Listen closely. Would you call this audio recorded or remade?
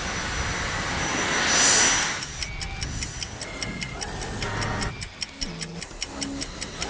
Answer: recorded